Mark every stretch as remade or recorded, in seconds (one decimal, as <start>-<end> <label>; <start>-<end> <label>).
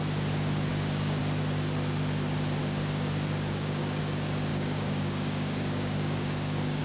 0.0-0.7 recorded; 0.7-1.2 remade; 1.2-2.6 recorded; 2.6-4.0 remade; 4.0-4.5 recorded; 4.5-6.8 remade